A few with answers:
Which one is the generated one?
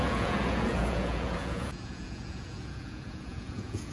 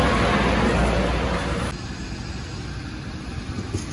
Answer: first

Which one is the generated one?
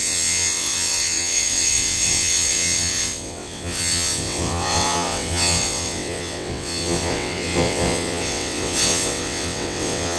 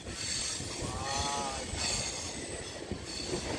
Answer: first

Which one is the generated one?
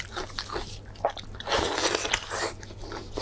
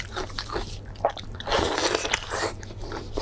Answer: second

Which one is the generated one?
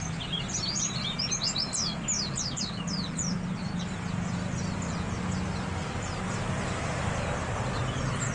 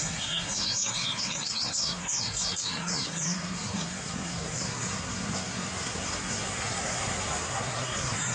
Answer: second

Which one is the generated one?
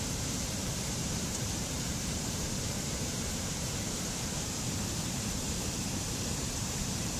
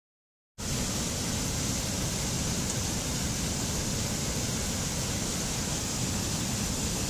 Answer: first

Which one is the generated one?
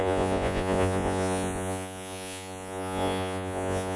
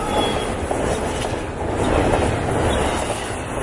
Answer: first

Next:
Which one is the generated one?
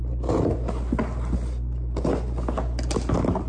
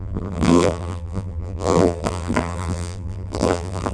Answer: second